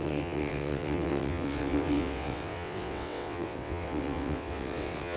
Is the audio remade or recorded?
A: remade